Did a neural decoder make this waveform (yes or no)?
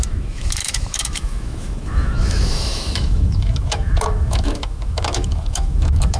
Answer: yes